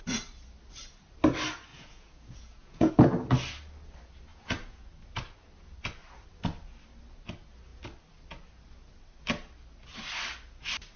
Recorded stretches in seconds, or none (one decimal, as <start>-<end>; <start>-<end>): 0.0-1.7; 2.9-4.3; 4.9-11.0